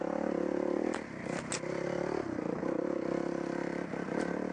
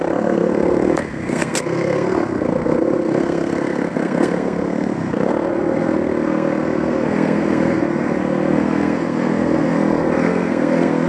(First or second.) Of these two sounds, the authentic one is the first